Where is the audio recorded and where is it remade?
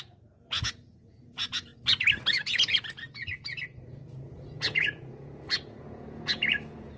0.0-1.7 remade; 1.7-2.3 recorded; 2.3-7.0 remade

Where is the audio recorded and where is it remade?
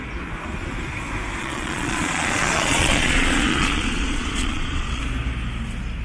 0.0-1.4 recorded; 1.4-5.0 remade; 5.0-6.0 recorded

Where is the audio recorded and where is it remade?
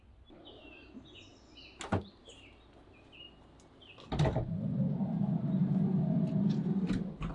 0.0-7.3 recorded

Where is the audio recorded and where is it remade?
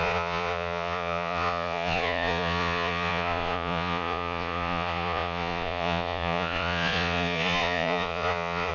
0.0-8.7 remade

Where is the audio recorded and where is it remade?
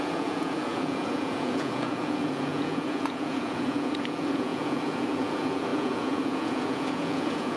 0.0-7.6 remade